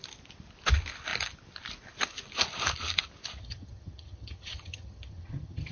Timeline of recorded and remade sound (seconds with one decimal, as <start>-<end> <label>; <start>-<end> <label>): 0.0-3.4 recorded; 3.4-5.7 remade